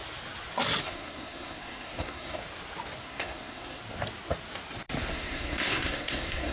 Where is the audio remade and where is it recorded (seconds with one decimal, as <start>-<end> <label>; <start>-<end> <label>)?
0.0-0.8 recorded; 0.8-2.4 remade; 2.4-3.0 recorded; 3.0-3.8 remade; 3.8-5.1 recorded; 5.1-6.5 remade